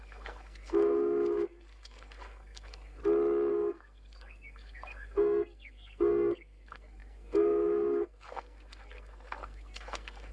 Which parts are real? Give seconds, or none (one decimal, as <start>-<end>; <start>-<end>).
3.0-3.5